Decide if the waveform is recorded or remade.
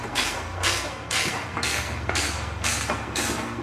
remade